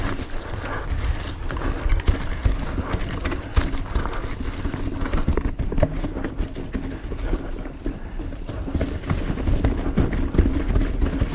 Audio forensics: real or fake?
real